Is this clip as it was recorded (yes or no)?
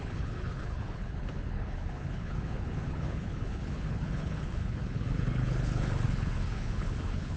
no